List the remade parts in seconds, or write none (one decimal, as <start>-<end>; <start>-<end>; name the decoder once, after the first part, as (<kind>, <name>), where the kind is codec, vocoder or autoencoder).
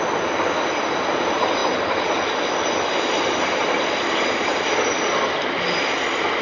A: none